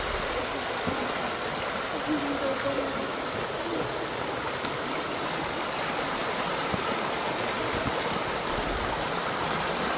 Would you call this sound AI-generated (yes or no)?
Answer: no